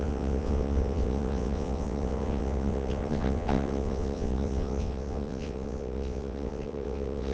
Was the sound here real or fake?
fake